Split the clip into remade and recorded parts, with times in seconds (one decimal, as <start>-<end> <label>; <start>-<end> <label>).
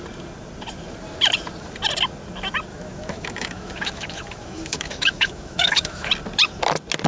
0.0-2.7 recorded; 2.7-6.1 remade; 6.1-7.1 recorded